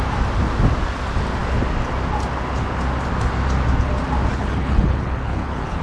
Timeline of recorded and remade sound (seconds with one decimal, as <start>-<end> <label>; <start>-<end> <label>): 0.0-4.3 recorded; 4.3-5.8 remade